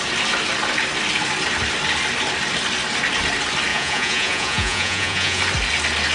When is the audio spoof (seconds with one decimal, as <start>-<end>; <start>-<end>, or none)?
3.7-5.4